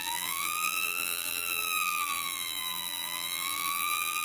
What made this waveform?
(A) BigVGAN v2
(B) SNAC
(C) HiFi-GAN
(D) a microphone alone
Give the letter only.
A